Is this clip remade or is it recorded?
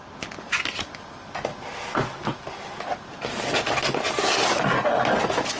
recorded